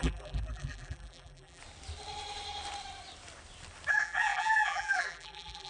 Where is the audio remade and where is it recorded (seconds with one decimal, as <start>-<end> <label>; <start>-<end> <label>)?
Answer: 0.0-1.6 remade; 1.6-3.9 recorded; 3.9-5.7 remade

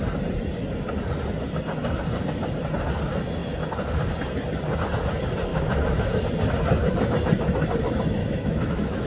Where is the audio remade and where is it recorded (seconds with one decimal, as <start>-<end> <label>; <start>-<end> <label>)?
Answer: 0.0-5.5 recorded; 5.5-6.2 remade; 6.2-8.2 recorded; 8.2-9.1 remade

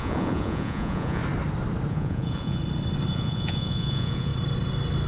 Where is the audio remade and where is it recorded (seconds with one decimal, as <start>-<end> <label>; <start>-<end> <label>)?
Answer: 0.0-1.2 remade; 1.2-1.9 recorded; 1.9-2.6 remade; 2.6-3.1 recorded; 3.1-4.3 remade; 4.3-5.1 recorded

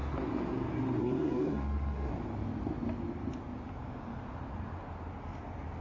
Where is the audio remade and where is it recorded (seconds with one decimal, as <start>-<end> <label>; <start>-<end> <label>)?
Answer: 0.0-1.0 recorded; 1.0-2.1 remade; 2.1-5.8 recorded

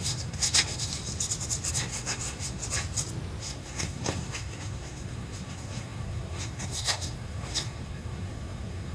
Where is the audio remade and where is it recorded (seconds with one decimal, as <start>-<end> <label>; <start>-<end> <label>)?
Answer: 0.0-0.9 remade; 0.9-1.7 recorded; 1.7-2.6 remade; 2.6-3.4 recorded; 3.4-8.9 remade

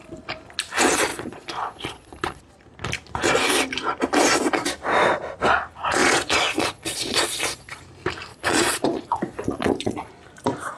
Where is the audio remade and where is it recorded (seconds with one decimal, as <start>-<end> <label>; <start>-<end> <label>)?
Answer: 0.0-1.1 recorded; 1.1-2.4 remade; 2.4-6.0 recorded; 6.0-7.8 remade; 7.8-8.3 recorded; 8.3-10.1 remade; 10.1-10.8 recorded